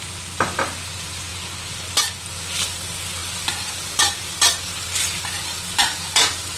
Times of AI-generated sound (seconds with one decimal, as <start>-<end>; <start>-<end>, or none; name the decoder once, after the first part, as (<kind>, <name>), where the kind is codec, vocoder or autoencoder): none